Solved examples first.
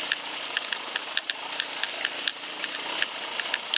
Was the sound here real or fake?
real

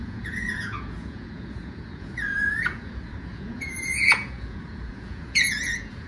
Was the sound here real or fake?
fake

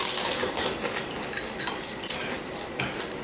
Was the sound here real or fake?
real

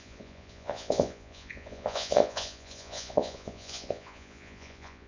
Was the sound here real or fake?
fake